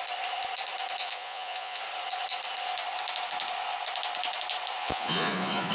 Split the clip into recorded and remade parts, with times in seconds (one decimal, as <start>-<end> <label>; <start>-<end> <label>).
0.0-1.0 recorded; 1.0-1.8 remade; 1.8-4.8 recorded; 4.8-5.7 remade